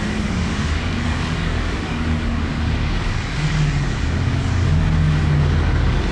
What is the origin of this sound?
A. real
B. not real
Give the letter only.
B